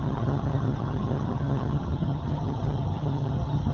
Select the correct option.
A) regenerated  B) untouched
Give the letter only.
A